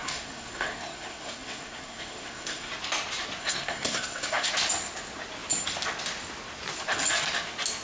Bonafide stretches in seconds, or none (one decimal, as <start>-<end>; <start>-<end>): 2.7-3.4; 4.5-7.8